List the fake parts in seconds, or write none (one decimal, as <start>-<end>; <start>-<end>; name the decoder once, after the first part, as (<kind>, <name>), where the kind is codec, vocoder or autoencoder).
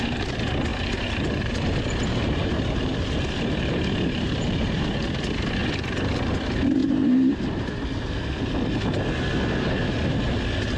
0.7-5.1 (vocoder, BigVGAN v2); 6.8-7.4